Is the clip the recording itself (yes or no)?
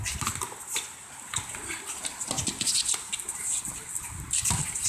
yes